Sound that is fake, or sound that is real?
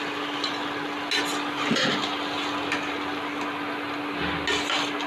real